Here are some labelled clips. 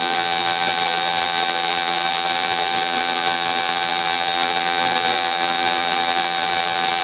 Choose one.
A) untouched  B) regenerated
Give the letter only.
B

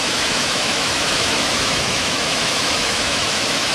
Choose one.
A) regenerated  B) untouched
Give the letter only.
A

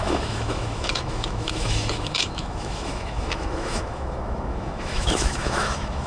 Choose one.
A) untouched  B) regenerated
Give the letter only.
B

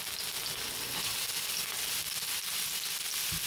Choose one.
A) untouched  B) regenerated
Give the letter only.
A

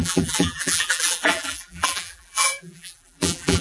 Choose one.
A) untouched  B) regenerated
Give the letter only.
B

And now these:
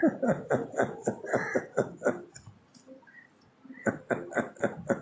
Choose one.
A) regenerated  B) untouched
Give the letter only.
B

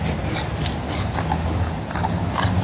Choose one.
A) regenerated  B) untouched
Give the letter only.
B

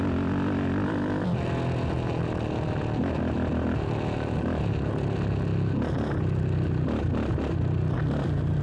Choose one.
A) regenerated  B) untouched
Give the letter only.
B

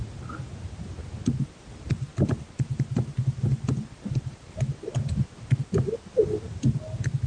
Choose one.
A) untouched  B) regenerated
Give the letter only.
A